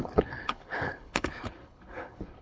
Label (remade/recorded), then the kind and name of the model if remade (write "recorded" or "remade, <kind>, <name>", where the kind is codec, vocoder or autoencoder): remade, codec, HILCodec